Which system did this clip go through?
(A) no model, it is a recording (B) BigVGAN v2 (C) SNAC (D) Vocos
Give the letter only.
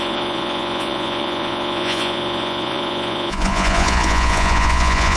D